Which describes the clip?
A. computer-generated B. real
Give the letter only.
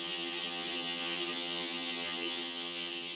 A